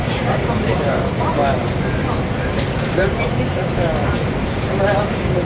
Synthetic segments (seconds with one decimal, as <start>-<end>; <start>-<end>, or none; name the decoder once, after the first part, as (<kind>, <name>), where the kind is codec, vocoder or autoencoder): 0.0-1.4 (vocoder, BigVGAN v2); 2.8-5.4